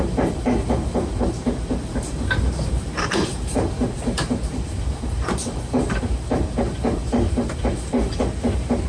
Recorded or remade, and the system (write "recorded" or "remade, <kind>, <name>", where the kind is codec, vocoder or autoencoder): remade, vocoder, BigVGAN v2